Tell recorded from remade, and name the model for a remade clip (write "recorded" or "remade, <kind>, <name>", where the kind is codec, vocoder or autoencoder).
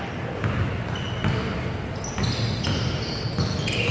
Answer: recorded